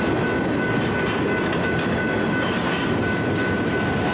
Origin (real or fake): real